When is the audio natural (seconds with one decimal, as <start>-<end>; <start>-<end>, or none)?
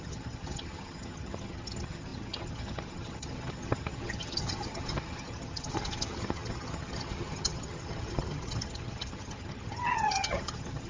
none